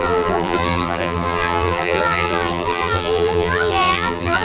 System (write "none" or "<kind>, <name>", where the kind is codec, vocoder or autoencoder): vocoder, BigVGAN v2